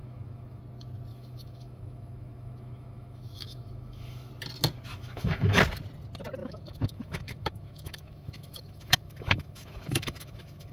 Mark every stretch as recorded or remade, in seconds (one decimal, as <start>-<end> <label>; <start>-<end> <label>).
0.0-0.6 remade; 0.6-1.1 recorded; 1.1-4.3 remade; 4.3-4.9 recorded; 4.9-5.6 remade; 5.6-6.4 recorded; 6.4-10.7 remade